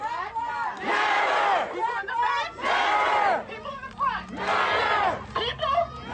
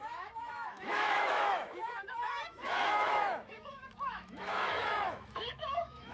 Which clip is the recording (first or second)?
first